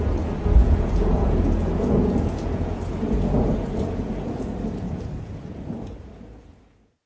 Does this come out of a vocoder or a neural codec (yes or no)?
yes